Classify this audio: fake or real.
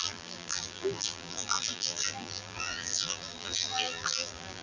fake